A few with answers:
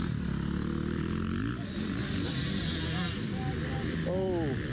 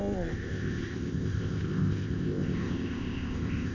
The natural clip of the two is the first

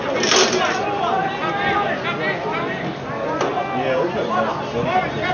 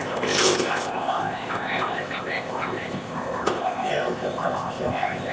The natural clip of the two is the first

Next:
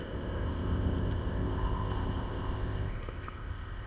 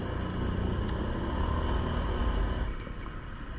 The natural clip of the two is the second